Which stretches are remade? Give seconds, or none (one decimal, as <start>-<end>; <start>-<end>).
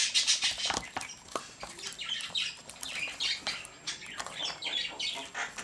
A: 0.0-3.4